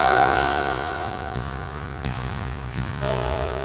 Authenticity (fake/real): fake